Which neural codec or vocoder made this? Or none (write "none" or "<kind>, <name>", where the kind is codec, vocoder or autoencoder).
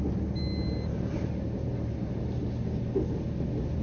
none